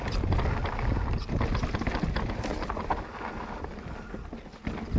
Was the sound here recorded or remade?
recorded